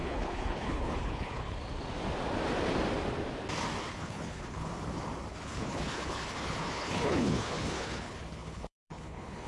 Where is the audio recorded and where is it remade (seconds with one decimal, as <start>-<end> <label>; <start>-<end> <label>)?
0.0-1.6 remade; 1.6-3.9 recorded; 3.9-4.7 remade; 4.7-5.3 recorded; 5.3-9.5 remade